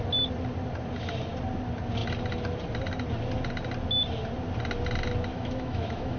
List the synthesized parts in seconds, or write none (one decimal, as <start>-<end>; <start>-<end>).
5.3-6.2